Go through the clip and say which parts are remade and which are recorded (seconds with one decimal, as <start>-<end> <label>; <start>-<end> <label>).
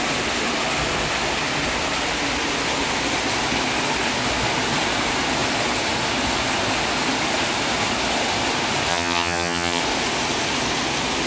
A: 0.0-8.9 recorded; 8.9-9.8 remade; 9.8-11.3 recorded